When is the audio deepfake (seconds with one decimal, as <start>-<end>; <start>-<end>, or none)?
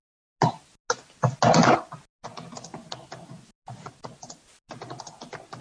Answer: none